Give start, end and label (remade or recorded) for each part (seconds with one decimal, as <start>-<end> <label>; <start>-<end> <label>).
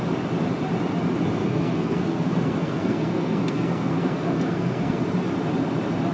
0.0-1.4 recorded; 1.4-5.0 remade; 5.0-6.1 recorded